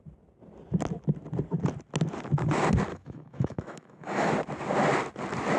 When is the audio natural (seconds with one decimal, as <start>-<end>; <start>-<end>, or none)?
0.0-2.9; 4.3-5.6